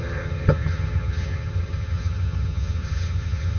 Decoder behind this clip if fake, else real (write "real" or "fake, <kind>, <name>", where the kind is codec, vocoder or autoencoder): fake, vocoder, HiFi-GAN